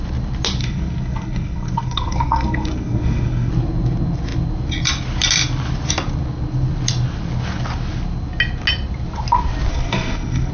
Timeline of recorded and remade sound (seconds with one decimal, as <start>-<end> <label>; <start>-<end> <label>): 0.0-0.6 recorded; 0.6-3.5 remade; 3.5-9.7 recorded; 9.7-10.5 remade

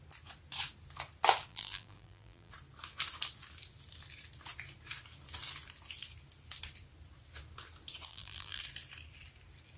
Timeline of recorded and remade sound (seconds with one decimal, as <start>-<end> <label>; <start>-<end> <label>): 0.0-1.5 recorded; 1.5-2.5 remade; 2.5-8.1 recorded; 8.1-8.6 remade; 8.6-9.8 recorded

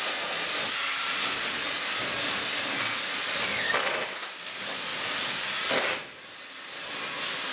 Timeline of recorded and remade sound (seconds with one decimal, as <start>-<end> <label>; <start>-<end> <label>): 0.0-7.5 recorded

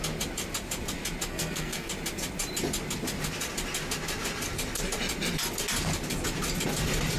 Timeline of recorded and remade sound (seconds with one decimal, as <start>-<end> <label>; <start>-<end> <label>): 0.0-1.3 recorded; 1.3-1.9 remade; 1.9-7.2 recorded

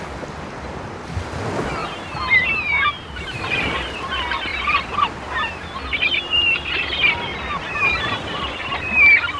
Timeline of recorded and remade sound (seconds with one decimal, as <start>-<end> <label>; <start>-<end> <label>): 0.0-1.8 recorded; 1.8-4.0 remade; 4.0-4.5 recorded; 4.5-5.0 remade; 5.0-9.4 recorded

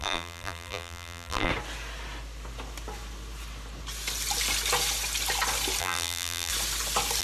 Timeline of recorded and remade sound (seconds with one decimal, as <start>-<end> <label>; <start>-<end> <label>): 0.0-1.5 remade; 1.5-5.8 recorded; 5.8-6.5 remade; 6.5-7.2 recorded